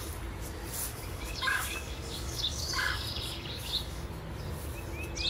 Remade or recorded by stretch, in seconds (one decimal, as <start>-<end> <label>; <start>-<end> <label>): 0.0-0.9 recorded; 0.9-4.1 remade; 4.1-5.3 recorded